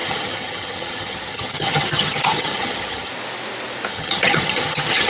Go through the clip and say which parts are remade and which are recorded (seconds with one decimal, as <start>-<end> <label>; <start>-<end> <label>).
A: 0.0-3.1 remade; 3.1-3.9 recorded; 3.9-5.1 remade